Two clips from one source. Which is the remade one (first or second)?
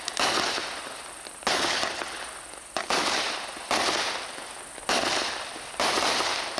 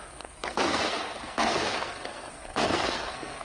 second